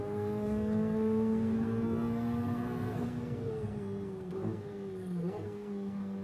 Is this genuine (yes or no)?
no